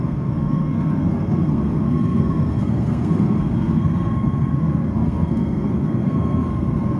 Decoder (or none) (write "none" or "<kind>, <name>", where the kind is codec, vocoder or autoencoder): codec, SNAC